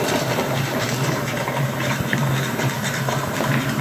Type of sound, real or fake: fake